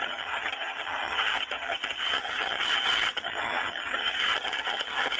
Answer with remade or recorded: remade